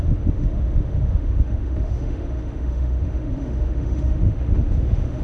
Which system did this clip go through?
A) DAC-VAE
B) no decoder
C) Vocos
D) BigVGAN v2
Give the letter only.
A